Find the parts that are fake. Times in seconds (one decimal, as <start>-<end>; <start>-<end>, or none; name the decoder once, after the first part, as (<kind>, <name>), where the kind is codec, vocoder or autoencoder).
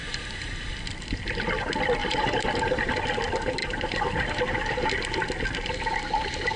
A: 0.0-0.7 (vocoder, BigVGAN v2); 2.0-3.0; 3.6-4.9